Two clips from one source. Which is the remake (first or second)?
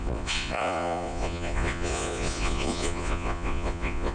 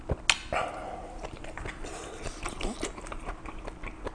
first